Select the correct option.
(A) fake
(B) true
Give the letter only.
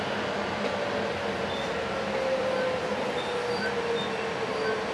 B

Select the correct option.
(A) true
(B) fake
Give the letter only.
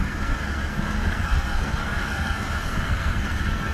B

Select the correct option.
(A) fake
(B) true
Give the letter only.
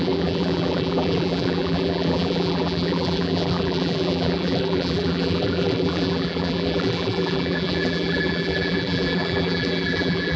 A